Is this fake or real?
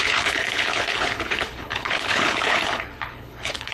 fake